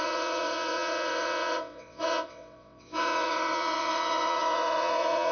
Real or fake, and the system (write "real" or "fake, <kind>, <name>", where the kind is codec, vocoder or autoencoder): fake, vocoder, WaveNeXt